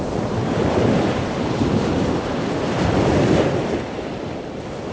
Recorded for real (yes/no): no